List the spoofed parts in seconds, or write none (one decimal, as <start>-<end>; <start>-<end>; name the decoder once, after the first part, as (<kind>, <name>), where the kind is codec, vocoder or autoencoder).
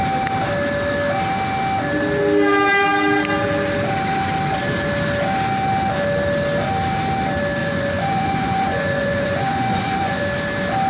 7.6-10.2 (vocoder, Vocos)